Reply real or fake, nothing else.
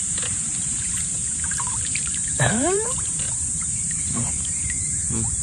fake